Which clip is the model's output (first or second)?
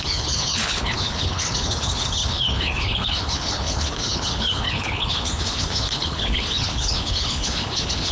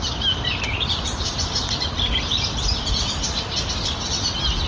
first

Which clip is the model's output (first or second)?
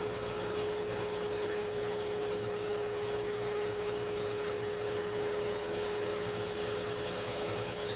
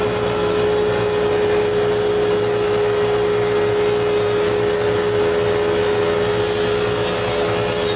first